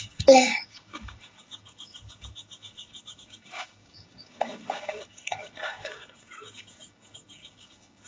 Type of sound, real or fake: fake